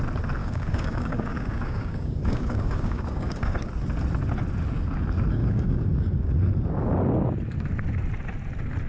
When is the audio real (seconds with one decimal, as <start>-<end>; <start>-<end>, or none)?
0.0-0.4; 3.7-5.4; 6.3-8.9